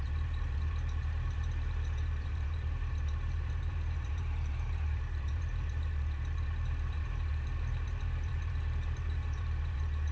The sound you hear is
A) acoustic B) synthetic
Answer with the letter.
B